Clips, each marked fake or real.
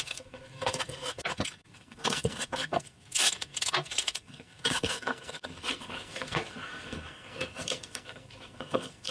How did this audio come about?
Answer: fake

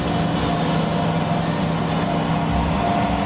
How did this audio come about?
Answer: real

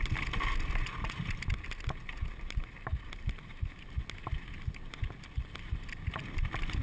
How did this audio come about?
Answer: real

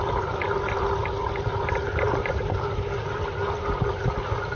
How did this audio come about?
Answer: real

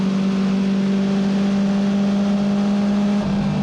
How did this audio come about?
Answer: real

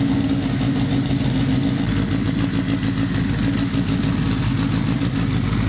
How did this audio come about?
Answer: real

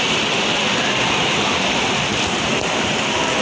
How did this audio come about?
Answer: real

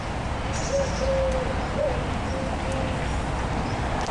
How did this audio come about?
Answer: real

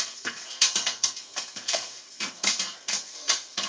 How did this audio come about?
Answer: fake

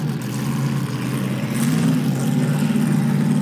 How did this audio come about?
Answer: real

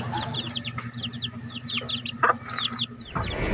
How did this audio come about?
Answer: real